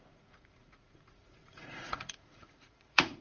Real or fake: fake